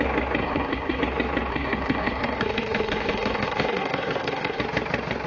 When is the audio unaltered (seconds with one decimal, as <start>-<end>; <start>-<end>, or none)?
0.0-0.4; 1.0-1.5; 4.6-5.3